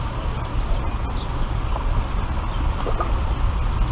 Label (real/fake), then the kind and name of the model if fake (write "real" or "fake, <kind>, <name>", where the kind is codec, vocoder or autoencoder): real